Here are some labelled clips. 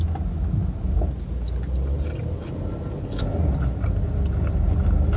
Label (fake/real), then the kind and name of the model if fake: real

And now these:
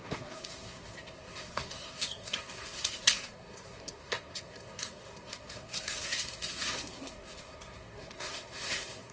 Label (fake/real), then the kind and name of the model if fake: fake, codec, SNAC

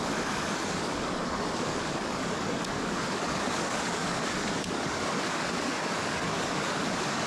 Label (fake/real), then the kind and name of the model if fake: fake, codec, DAC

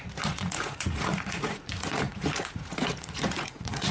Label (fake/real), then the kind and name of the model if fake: fake, vocoder, Vocos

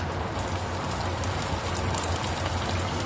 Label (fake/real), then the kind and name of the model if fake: real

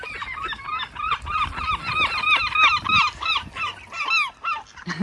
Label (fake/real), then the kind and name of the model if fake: real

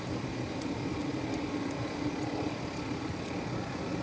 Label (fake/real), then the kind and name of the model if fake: real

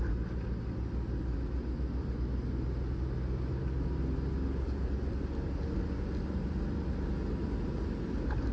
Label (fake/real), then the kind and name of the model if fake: real